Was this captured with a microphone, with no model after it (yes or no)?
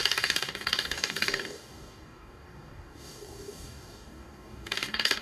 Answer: no